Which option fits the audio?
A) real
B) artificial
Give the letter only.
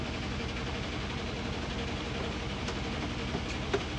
A